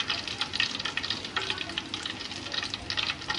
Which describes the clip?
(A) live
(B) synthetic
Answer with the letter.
A